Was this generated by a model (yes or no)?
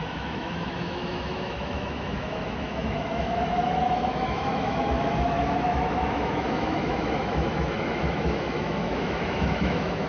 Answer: yes